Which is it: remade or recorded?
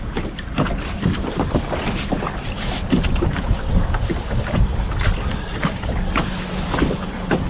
recorded